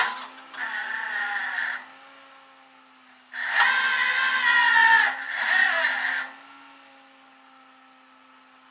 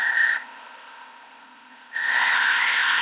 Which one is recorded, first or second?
first